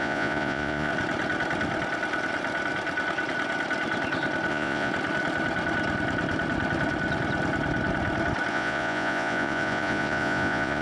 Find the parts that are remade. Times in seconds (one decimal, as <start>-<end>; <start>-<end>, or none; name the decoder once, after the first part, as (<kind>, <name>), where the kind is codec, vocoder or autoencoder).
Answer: 0.0-0.9 (vocoder, Vocos); 4.5-4.9; 8.5-10.8